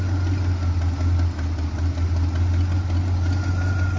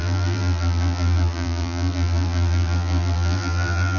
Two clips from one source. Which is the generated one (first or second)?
second